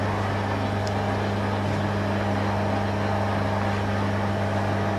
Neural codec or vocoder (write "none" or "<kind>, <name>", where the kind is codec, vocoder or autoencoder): none